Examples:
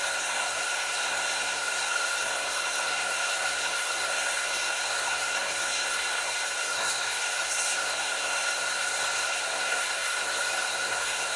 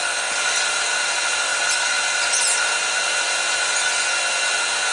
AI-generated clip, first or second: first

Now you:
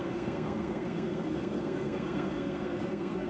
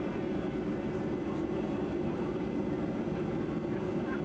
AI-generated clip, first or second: first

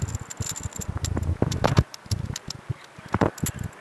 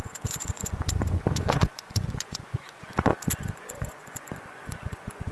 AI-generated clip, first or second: second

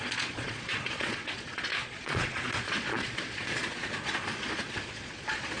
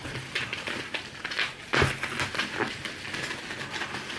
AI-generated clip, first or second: first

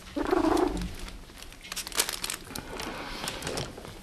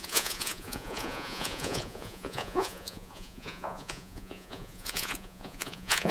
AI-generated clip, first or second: second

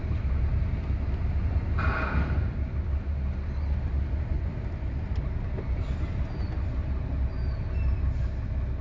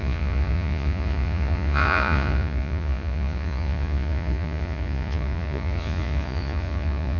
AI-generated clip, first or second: second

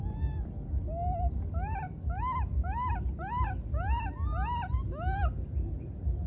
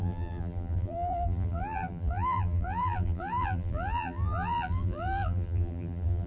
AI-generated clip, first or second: second